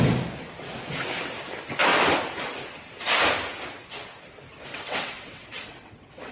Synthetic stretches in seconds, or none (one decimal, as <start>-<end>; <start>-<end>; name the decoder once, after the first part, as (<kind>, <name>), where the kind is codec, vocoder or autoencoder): 4.7-6.3 (vocoder, WaveNeXt)